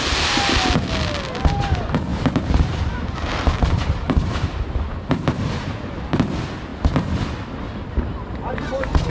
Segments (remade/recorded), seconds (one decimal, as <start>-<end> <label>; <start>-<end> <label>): 0.0-2.1 recorded; 2.1-6.3 remade; 6.3-9.1 recorded